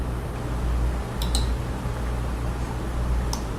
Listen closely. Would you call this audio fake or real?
real